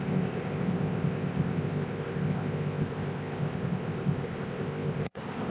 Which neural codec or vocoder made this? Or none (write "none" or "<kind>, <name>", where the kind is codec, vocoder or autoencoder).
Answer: codec, ZipCodec